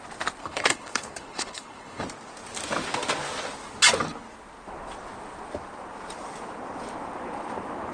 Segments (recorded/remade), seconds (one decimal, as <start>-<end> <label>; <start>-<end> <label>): 0.0-0.4 recorded; 0.4-2.0 remade; 2.0-7.9 recorded